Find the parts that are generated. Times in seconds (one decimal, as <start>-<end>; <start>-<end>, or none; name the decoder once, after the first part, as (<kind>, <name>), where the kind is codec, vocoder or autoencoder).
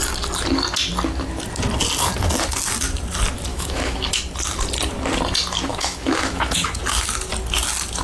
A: 3.5-4.2 (autoencoder, DAC-VAE); 5.7-6.8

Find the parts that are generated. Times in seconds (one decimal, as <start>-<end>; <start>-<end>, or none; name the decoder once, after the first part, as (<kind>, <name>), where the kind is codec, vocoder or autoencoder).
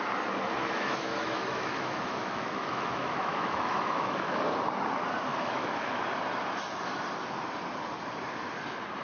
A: 0.6-4.4 (autoencoder, DAC-VAE); 5.3-6.0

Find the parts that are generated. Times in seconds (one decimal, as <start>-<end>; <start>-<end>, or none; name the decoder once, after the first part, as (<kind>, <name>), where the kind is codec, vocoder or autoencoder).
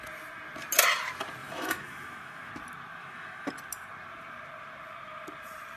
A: 1.4-2.5 (autoencoder, DAC-VAE); 3.0-3.5